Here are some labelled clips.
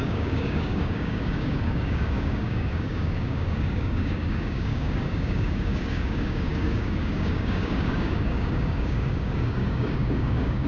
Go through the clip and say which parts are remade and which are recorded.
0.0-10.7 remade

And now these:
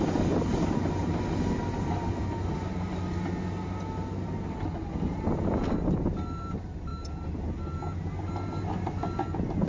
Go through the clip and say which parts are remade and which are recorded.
0.0-9.7 recorded